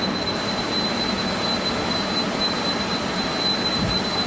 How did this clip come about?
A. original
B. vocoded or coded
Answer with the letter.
A